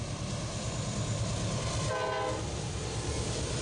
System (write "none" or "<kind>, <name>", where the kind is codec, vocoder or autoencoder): none